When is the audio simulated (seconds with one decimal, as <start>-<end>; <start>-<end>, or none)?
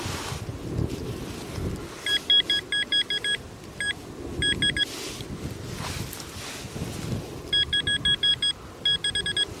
none